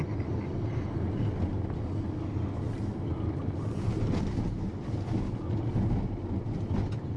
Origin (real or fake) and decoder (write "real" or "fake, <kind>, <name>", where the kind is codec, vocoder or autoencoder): real